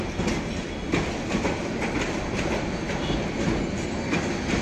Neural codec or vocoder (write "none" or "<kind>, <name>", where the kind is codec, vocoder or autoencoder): none